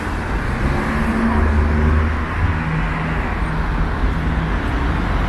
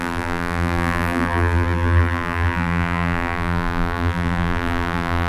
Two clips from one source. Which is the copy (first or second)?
second